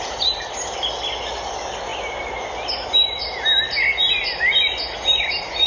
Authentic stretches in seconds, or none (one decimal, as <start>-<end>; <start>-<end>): 0.0-5.7